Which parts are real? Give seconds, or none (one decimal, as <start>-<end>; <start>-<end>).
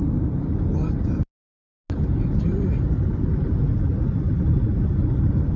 0.0-2.1; 2.7-5.6